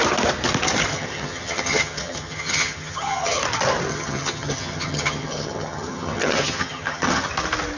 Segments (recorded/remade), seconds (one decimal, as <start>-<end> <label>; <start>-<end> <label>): 0.0-0.9 recorded; 0.9-3.4 remade; 3.4-3.9 recorded; 3.9-7.3 remade; 7.3-7.8 recorded